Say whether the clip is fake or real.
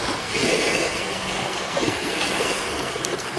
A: fake